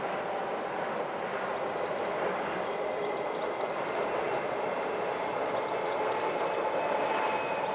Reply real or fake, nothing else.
real